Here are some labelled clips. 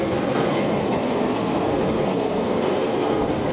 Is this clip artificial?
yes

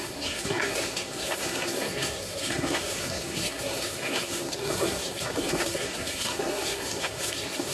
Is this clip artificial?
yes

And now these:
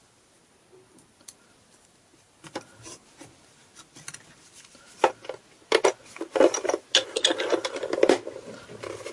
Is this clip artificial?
no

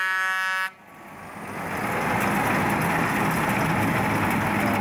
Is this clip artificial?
no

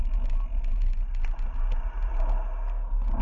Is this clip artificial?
no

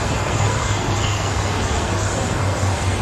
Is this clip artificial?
yes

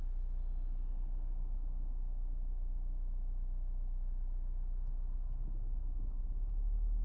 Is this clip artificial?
no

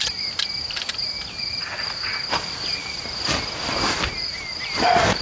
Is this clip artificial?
no